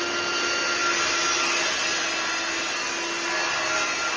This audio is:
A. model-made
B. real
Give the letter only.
B